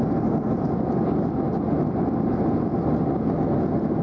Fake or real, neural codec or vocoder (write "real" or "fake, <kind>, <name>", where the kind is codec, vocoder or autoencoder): real